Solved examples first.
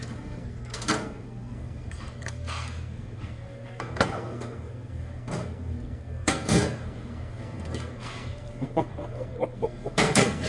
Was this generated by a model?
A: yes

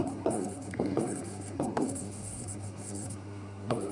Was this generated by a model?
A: yes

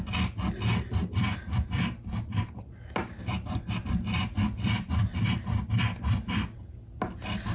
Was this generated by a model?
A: no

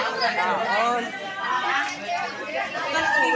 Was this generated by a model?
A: no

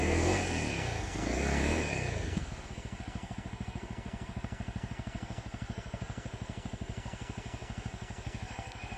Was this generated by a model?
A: yes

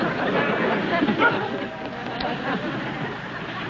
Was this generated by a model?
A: no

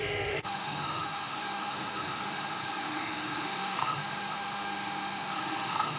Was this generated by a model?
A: yes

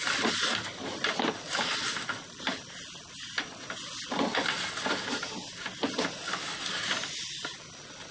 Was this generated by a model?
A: no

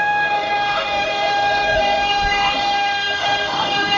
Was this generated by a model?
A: yes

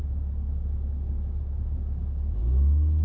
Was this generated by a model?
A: no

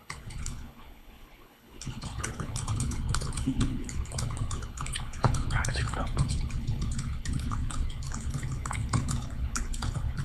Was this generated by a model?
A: yes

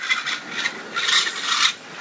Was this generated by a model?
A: no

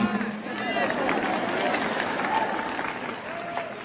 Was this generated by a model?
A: no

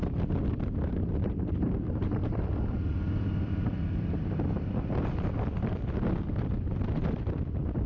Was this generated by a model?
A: yes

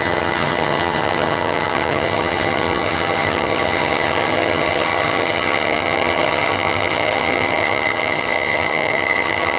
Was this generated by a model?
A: yes